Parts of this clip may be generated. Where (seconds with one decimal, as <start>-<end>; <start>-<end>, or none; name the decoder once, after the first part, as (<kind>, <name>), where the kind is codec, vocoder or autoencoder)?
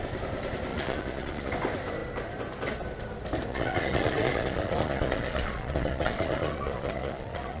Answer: 0.7-1.5 (vocoder, Vocos); 3.5-7.6